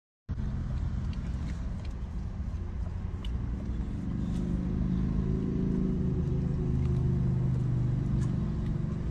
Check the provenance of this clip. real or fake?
real